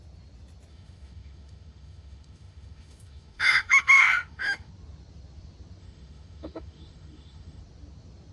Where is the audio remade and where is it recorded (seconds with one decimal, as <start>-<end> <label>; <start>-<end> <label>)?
0.0-0.7 recorded; 0.7-4.7 remade; 4.7-5.8 recorded; 5.8-7.6 remade; 7.6-8.3 recorded